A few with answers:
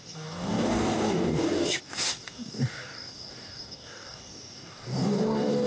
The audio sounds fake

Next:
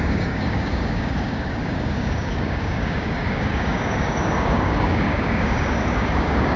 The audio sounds fake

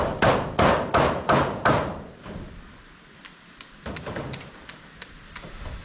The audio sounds real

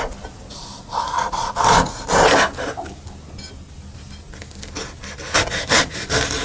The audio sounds real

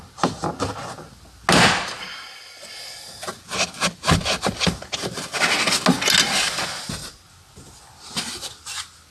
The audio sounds real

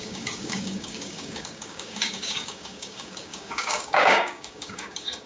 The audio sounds fake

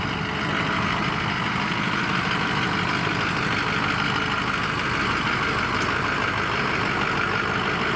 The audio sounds real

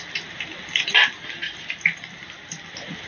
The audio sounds real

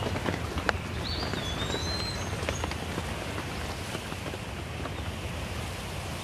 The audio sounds real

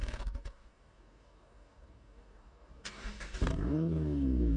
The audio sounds fake